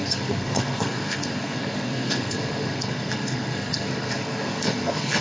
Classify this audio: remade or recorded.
remade